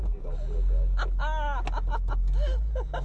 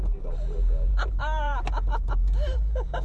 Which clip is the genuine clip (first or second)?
first